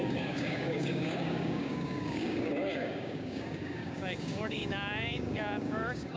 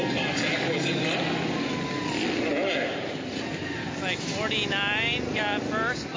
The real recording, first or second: second